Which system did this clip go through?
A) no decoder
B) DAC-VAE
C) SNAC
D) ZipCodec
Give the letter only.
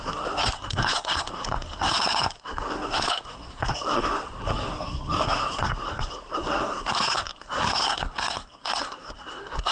C